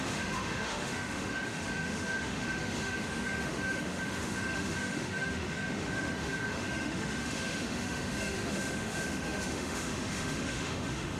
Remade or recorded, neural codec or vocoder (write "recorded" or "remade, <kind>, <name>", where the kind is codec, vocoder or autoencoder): remade, autoencoder, DAC-VAE